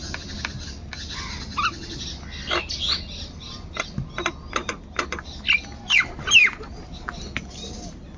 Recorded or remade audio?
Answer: recorded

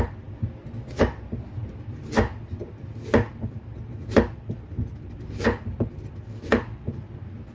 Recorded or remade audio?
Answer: recorded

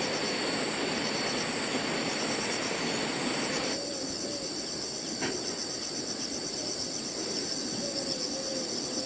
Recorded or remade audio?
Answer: recorded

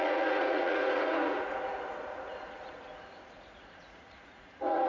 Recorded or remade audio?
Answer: remade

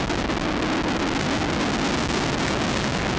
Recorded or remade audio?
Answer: recorded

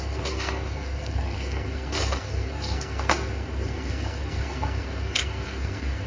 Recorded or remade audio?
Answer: remade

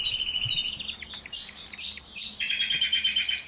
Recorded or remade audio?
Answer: remade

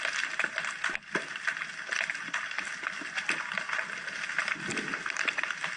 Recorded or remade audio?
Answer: recorded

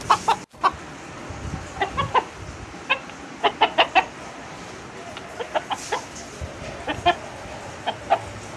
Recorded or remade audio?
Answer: recorded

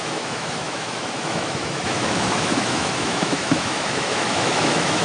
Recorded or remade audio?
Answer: remade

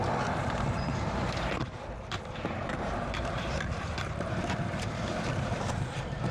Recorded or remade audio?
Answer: remade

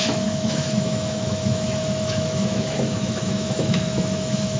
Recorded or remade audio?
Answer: remade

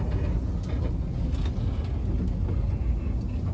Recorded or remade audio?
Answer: recorded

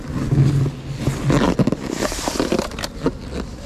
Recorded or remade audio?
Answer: recorded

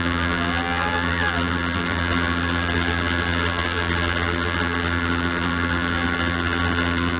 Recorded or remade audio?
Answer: remade